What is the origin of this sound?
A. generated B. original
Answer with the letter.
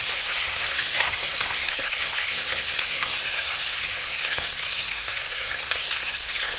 A